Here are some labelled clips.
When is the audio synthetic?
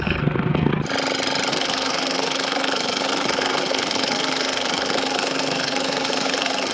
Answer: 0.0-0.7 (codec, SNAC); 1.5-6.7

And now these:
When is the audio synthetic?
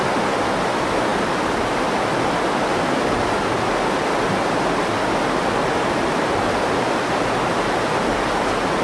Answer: none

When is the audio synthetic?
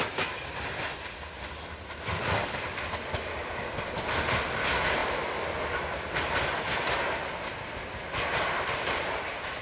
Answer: none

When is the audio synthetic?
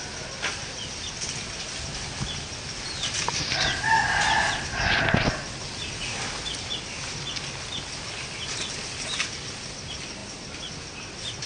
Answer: none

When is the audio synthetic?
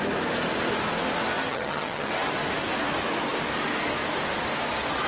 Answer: 1.5-2.1 (vocoder, HiFi-GAN)